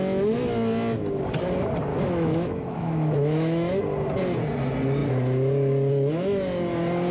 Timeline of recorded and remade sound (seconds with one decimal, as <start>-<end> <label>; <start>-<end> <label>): 0.0-1.9 recorded; 1.9-3.8 remade; 3.8-7.1 recorded